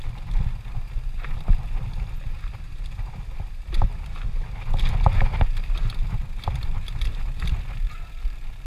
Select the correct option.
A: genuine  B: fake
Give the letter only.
A